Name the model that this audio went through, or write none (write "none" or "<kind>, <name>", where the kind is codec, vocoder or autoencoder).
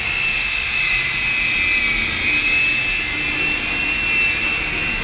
none